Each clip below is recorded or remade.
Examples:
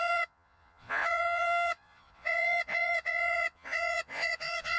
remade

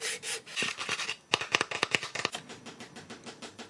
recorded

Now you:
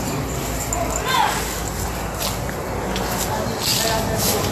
recorded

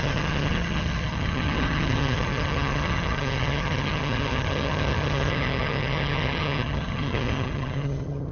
remade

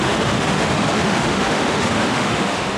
remade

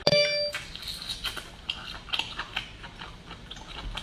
recorded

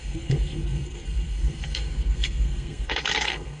remade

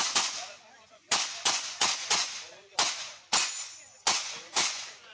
remade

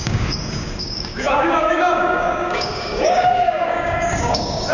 remade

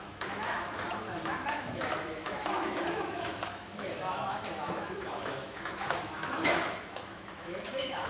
remade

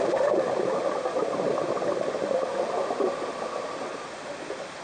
recorded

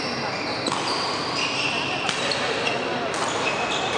recorded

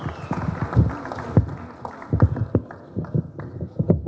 recorded